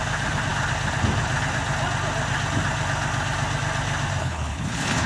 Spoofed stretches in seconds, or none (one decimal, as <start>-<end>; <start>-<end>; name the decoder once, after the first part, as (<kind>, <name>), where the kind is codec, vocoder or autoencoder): 4.2-5.1 (codec, HILCodec)